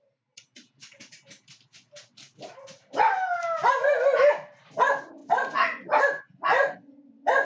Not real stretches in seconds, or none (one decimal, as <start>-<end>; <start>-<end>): none